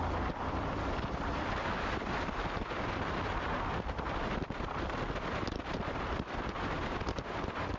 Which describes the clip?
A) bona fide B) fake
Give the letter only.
B